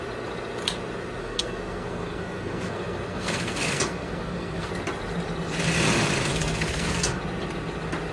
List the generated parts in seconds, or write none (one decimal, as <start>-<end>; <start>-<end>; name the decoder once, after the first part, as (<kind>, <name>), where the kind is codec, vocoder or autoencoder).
1.2-4.7 (codec, SNAC); 6.3-7.2